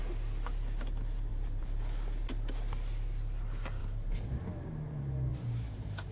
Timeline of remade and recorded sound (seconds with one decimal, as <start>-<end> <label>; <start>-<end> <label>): 0.0-1.3 recorded; 1.3-1.8 remade; 1.8-3.8 recorded; 3.8-4.4 remade; 4.4-5.3 recorded; 5.3-6.1 remade